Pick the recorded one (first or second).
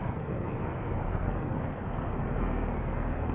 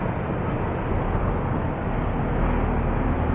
second